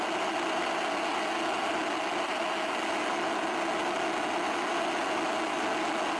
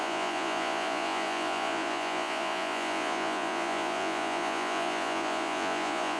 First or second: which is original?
first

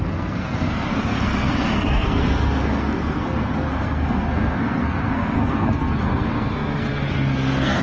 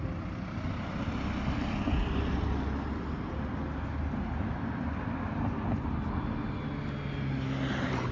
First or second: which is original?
second